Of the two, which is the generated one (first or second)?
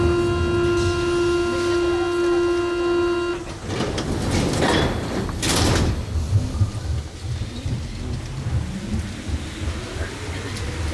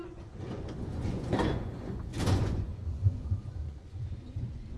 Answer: second